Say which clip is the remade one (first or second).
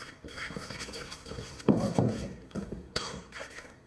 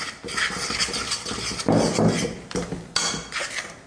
first